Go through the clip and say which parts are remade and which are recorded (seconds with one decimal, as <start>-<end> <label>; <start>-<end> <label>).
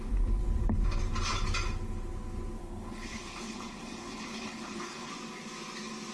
0.0-2.6 recorded; 2.6-5.1 remade; 5.1-6.1 recorded